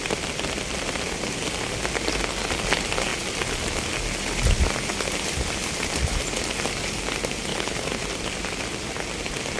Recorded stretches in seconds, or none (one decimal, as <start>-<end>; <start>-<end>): 0.0-7.5; 8.0-9.6